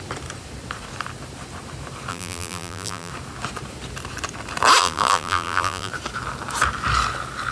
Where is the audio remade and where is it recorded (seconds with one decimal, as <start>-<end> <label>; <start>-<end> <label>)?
0.0-2.1 recorded; 2.1-3.1 remade; 3.1-4.8 recorded; 4.8-5.9 remade; 5.9-7.5 recorded